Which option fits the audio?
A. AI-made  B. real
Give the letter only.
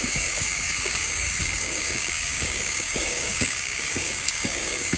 A